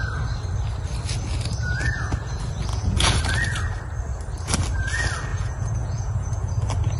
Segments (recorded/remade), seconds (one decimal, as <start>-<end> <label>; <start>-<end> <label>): 0.0-2.7 recorded; 2.7-3.2 remade; 3.2-5.3 recorded; 5.3-6.5 remade; 6.5-7.0 recorded